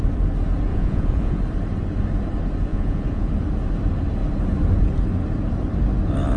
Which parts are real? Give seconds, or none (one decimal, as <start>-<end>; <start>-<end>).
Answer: 0.0-0.7; 1.4-2.7; 3.3-6.4